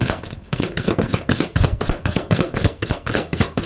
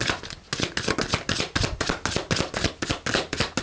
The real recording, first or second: second